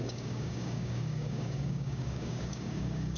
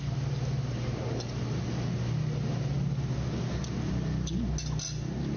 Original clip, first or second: second